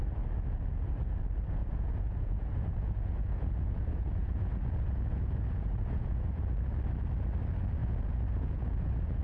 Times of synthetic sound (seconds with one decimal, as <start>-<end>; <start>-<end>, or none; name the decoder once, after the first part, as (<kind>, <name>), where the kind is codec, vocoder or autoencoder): 1.6-6.4 (vocoder, Vocos); 7.8-9.2